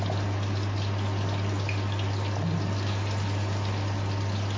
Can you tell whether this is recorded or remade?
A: recorded